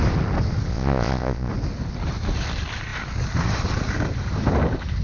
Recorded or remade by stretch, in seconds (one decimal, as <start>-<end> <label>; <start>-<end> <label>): 0.0-0.7 recorded; 0.7-1.5 remade; 1.5-5.0 recorded